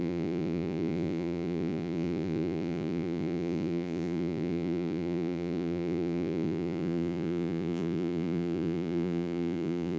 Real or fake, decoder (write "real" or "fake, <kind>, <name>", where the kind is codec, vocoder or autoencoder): fake, vocoder, Vocos